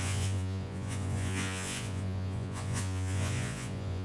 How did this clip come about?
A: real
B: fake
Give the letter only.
B